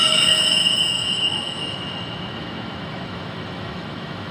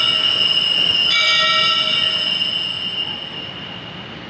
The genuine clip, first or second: second